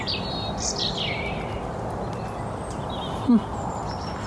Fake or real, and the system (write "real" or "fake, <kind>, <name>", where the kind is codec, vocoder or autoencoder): real